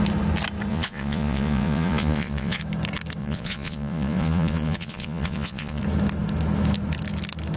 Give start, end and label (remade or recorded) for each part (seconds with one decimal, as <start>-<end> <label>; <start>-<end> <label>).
0.0-0.7 recorded; 0.7-2.6 remade; 2.6-3.2 recorded; 3.2-5.8 remade; 5.8-7.6 recorded